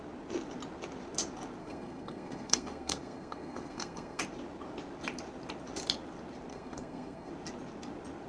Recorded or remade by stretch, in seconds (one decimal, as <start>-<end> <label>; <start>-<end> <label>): 0.0-1.6 recorded; 1.6-4.2 remade; 4.2-6.5 recorded; 6.5-7.3 remade; 7.3-8.3 recorded